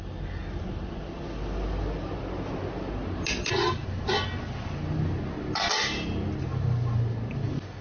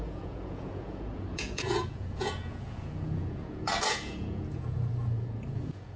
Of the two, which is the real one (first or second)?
first